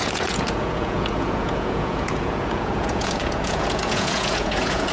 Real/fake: fake